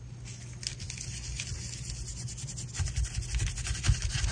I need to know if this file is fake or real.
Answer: real